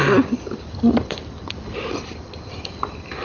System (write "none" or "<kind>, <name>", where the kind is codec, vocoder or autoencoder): vocoder, BigVGAN v2